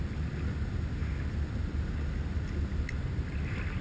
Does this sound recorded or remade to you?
recorded